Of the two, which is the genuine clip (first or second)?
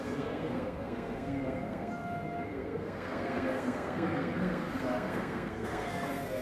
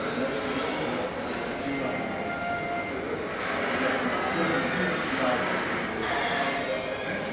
second